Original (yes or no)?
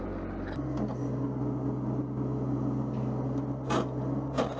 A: yes